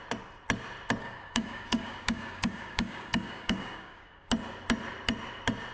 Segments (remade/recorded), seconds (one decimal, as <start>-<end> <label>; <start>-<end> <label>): 0.0-1.0 recorded; 1.0-4.3 remade; 4.3-5.7 recorded